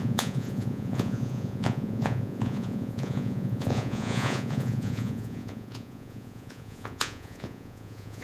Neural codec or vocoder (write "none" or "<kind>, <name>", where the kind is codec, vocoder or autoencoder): vocoder, Vocos